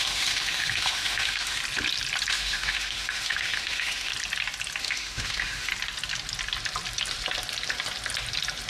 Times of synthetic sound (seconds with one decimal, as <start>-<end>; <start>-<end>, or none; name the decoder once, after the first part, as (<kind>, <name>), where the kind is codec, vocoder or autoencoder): 0.0-1.6 (autoencoder, DAC-VAE); 2.3-4.1; 4.8-5.7